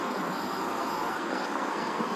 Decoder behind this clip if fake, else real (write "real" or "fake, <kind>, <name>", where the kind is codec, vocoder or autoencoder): fake, codec, SNAC